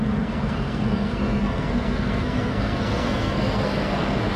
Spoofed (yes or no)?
yes